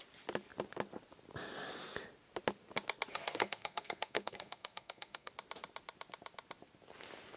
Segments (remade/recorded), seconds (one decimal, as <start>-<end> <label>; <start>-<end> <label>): 0.0-3.1 recorded; 3.1-5.3 remade; 5.3-7.4 recorded